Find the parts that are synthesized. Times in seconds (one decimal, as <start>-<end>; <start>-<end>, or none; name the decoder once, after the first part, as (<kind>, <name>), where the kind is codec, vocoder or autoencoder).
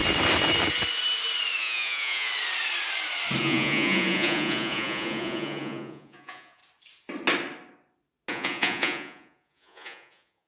1.6-2.3 (vocoder, Vocos); 3.4-6.6; 8.3-10.5